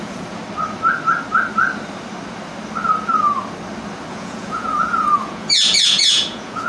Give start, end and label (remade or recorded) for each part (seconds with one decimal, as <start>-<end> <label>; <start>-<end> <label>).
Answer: 0.0-0.4 remade; 0.4-4.1 recorded; 4.1-6.7 remade